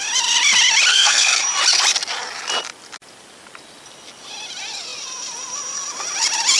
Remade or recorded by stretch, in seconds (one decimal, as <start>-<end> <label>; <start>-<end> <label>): 0.0-0.9 recorded; 0.9-1.4 remade; 1.4-6.6 recorded